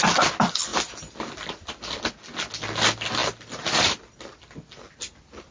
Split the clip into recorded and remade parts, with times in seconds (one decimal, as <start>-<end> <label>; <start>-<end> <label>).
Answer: 0.0-5.5 recorded

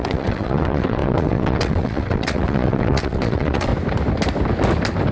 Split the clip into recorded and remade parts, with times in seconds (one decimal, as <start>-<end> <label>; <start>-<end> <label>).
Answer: 0.0-3.7 remade; 3.7-5.1 recorded

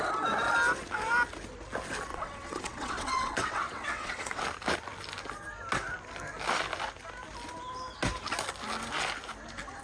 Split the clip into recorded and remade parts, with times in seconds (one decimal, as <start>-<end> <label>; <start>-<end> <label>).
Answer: 0.0-2.1 recorded; 2.1-4.4 remade; 4.4-9.8 recorded

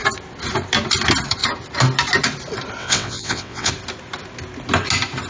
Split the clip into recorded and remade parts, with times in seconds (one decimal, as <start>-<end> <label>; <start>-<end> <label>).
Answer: 0.0-2.8 recorded; 2.8-3.7 remade; 3.7-5.3 recorded

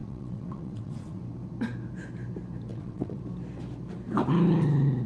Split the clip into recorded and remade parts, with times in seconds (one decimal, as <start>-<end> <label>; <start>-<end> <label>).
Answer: 0.0-1.2 remade; 1.2-2.7 recorded; 2.7-3.2 remade; 3.2-5.1 recorded

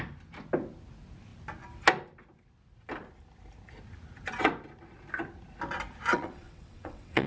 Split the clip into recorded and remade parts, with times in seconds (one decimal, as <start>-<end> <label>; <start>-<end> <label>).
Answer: 0.0-6.1 recorded; 6.1-7.3 remade

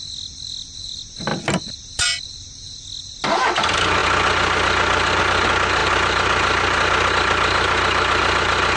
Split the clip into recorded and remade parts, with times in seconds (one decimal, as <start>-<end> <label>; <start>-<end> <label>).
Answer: 0.0-8.8 recorded

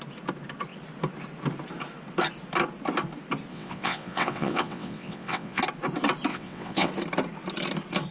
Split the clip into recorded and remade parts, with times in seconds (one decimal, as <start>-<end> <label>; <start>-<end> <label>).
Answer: 0.0-3.5 recorded; 3.5-5.6 remade; 5.6-6.3 recorded; 6.3-6.9 remade; 6.9-8.1 recorded